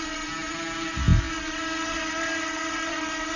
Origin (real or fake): real